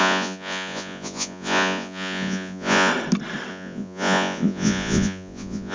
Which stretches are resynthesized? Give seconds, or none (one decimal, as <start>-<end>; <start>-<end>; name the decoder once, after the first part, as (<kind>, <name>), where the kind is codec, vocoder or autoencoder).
0.0-2.9 (vocoder, Vocos); 3.5-5.7